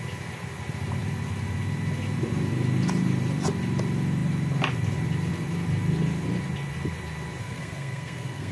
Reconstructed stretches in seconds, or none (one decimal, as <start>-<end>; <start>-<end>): 7.4-8.5